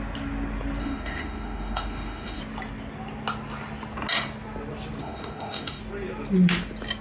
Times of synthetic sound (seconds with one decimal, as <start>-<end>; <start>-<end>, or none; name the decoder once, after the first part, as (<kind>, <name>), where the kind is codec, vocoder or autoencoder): 0.8-2.4 (autoencoder, DAC-VAE); 5.0-5.8